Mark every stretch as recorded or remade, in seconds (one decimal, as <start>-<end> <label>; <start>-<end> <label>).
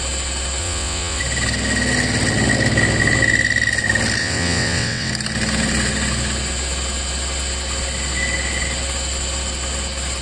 0.0-0.6 recorded; 0.6-1.2 remade; 1.2-4.2 recorded; 4.2-5.1 remade; 5.1-10.2 recorded